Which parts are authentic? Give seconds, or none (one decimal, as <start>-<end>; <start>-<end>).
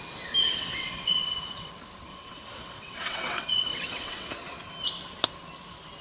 0.0-0.4; 1.7-2.1; 4.3-6.0